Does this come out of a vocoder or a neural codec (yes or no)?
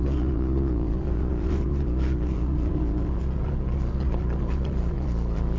yes